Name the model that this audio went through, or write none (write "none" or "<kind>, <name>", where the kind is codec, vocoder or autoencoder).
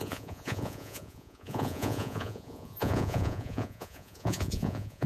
vocoder, Vocos